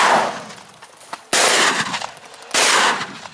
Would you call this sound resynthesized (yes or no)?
no